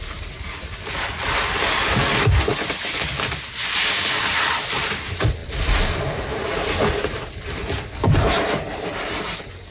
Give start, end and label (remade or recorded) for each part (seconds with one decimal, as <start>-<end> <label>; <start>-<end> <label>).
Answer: 0.0-9.7 remade